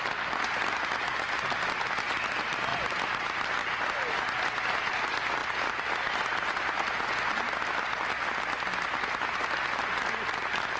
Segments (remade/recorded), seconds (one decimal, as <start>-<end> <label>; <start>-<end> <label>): 0.0-10.8 recorded